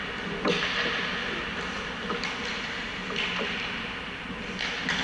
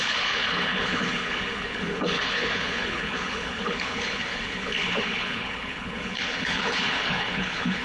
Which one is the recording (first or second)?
first